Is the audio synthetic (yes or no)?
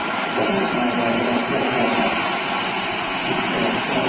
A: yes